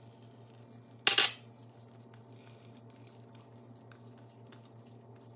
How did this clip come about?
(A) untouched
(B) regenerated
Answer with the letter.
A